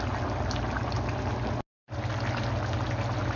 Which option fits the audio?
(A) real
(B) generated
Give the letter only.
A